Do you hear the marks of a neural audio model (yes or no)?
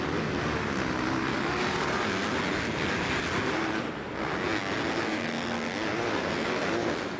no